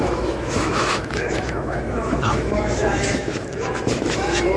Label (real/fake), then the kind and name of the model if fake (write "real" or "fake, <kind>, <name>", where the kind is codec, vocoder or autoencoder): fake, autoencoder, DAC-VAE